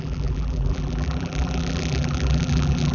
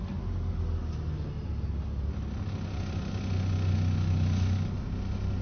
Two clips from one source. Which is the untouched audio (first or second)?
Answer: second